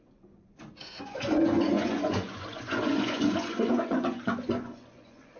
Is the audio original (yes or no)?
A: no